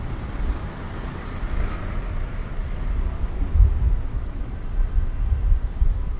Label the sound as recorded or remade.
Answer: recorded